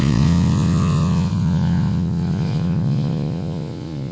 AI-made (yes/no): yes